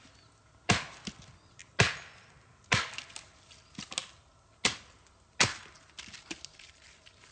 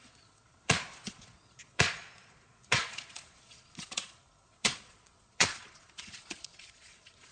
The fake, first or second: second